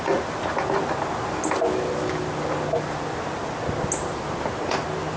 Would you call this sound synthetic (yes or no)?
no